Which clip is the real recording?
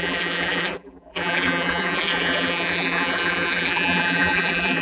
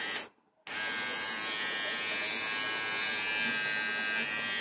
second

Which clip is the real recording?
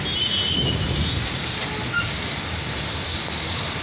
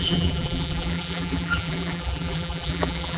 first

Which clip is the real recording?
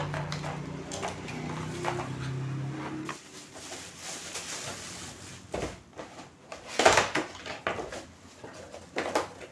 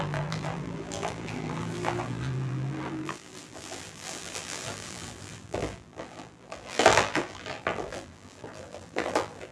first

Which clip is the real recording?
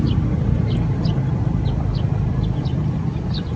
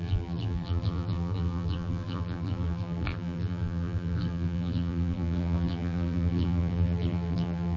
first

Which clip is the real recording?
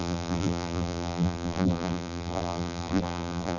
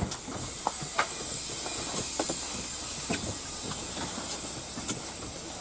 second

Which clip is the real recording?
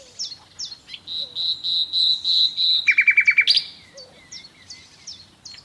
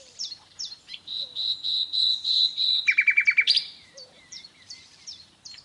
first